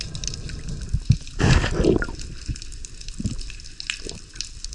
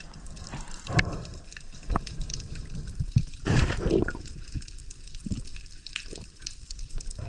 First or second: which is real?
first